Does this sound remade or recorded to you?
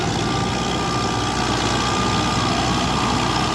recorded